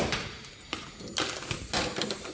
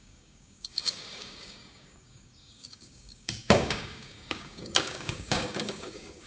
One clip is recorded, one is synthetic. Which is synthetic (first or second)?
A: second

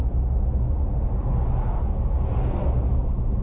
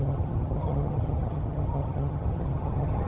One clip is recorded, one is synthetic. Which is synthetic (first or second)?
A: second